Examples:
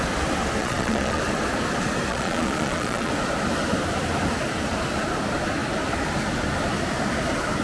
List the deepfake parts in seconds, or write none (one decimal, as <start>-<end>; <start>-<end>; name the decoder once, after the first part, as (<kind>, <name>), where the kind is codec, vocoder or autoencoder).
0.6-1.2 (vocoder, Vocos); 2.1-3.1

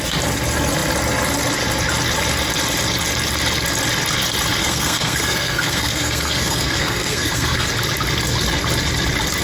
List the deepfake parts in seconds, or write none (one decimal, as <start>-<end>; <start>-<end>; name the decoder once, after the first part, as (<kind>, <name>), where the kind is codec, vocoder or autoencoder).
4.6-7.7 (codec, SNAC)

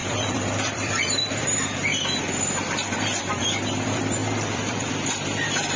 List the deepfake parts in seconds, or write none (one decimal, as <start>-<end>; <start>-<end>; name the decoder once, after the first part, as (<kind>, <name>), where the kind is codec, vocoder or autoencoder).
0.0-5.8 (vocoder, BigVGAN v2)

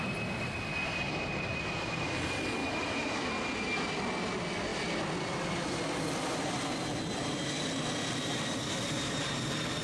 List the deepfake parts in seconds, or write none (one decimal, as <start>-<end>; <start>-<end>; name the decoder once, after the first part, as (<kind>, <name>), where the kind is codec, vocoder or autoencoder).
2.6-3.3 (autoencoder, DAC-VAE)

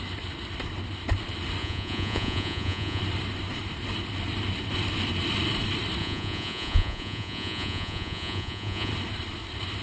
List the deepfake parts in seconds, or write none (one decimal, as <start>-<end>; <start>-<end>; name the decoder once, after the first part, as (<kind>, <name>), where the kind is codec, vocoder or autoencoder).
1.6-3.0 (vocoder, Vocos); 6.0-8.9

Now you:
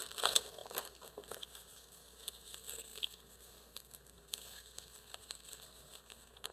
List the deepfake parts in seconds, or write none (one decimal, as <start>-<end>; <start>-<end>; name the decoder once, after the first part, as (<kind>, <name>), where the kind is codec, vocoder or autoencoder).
0.0-6.5 (codec, SNAC)

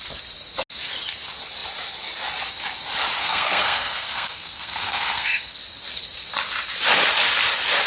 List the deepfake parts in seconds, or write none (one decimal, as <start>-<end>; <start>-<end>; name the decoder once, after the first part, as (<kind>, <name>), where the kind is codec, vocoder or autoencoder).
3.2-5.6 (codec, SNAC)